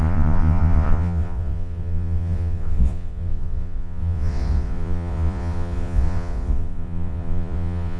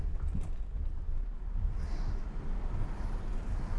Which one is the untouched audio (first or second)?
second